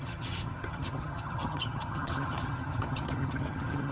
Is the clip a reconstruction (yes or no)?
yes